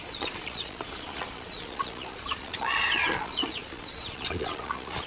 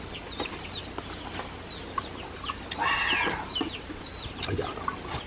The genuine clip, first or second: second